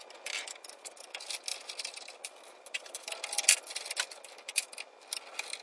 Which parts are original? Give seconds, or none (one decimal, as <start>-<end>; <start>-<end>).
0.0-5.6